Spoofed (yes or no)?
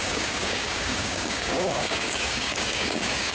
yes